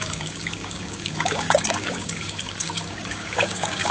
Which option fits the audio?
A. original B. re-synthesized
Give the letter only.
B